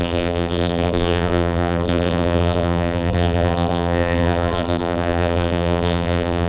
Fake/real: fake